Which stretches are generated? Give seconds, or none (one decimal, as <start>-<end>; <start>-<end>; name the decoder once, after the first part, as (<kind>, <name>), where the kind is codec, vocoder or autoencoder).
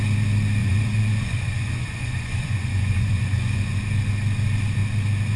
0.6-3.8 (vocoder, Vocos)